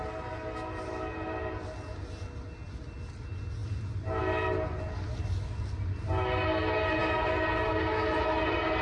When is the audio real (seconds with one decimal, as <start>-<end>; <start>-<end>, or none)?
0.0-8.8